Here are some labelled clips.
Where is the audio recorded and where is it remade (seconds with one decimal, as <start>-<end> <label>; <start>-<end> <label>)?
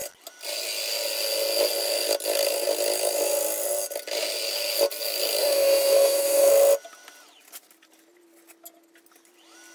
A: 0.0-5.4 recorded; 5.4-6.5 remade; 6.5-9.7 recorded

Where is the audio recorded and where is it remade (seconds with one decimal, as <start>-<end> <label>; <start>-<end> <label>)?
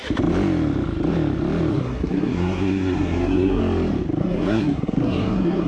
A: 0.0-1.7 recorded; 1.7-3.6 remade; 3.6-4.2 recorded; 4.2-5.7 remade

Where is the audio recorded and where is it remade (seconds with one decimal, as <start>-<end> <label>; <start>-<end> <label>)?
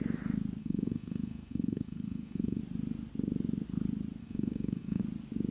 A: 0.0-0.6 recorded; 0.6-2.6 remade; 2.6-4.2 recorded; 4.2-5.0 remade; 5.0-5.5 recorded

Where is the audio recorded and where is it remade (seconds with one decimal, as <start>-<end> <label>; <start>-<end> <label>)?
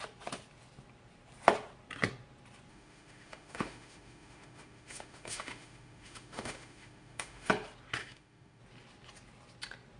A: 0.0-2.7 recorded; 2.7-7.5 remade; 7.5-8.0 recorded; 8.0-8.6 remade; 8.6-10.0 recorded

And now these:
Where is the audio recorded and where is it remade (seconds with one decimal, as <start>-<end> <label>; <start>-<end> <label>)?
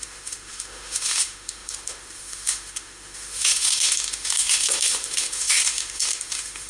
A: 0.0-6.7 remade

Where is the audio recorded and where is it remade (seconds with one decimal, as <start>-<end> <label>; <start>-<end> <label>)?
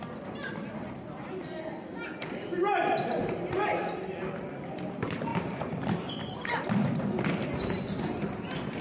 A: 0.0-5.3 recorded; 5.3-6.8 remade; 6.8-8.8 recorded